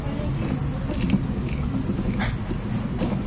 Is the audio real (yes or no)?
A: yes